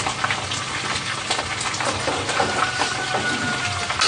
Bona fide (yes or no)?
yes